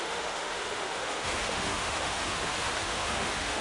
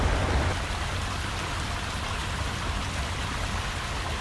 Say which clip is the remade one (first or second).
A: first